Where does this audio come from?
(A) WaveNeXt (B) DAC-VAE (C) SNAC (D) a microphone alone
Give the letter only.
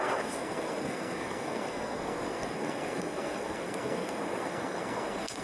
C